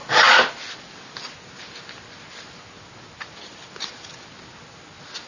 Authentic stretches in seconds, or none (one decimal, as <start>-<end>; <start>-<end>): 0.0-5.3